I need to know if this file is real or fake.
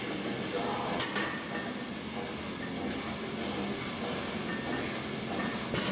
real